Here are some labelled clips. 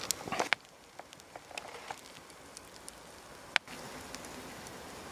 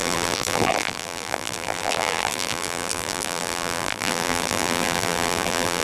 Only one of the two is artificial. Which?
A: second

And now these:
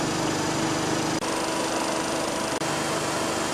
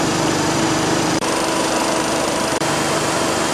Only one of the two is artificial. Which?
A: second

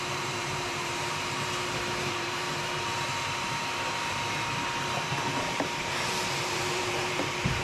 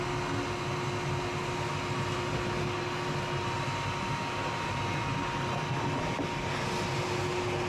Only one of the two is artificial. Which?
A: first